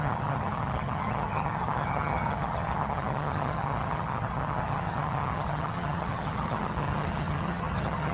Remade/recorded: remade